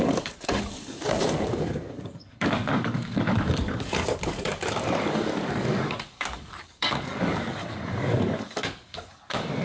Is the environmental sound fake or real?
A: fake